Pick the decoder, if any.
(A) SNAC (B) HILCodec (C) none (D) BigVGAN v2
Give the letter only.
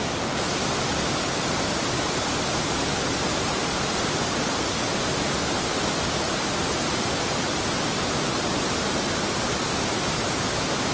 C